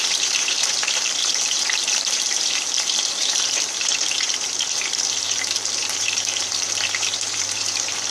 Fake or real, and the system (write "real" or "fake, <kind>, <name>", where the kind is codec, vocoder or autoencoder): fake, vocoder, BigVGAN v2